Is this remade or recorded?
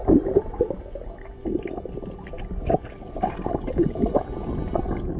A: recorded